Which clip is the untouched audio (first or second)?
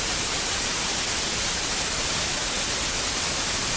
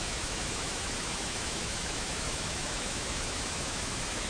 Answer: first